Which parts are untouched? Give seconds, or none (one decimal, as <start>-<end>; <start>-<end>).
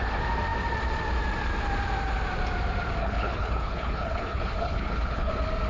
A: 0.0-3.0; 5.3-5.7